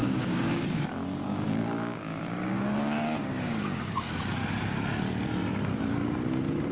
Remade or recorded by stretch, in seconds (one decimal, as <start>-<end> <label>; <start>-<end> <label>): 0.0-4.0 remade; 4.0-6.7 recorded